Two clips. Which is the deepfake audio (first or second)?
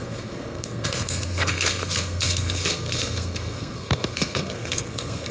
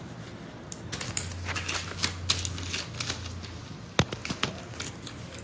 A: first